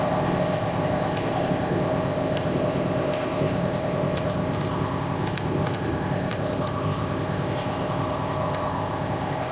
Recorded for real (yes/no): no